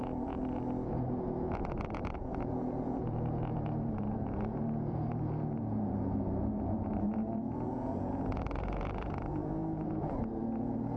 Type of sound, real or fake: fake